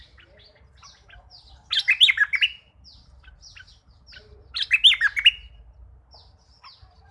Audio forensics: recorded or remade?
recorded